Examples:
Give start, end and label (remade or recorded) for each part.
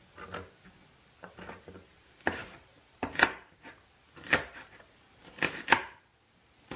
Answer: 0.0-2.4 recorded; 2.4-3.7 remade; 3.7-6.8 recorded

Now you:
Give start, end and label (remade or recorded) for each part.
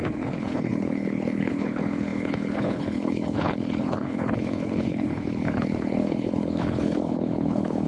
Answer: 0.0-7.9 remade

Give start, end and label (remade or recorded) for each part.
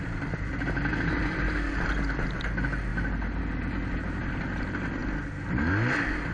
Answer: 0.0-6.3 recorded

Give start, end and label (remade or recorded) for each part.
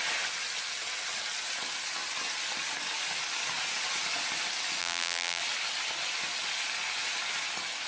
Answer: 0.0-4.8 recorded; 4.8-5.4 remade; 5.4-7.9 recorded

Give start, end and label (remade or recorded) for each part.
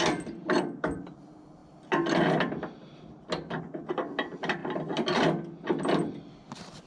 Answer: 0.0-6.9 recorded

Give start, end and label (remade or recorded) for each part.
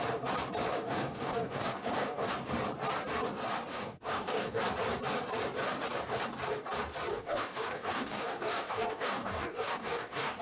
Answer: 0.0-0.7 recorded; 0.7-2.3 remade; 2.3-3.7 recorded; 3.7-4.6 remade; 4.6-7.1 recorded; 7.1-10.4 remade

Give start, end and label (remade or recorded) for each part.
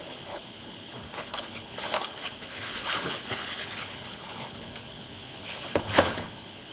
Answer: 0.0-6.7 remade